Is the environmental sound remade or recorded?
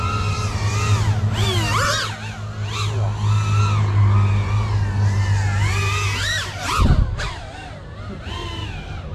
recorded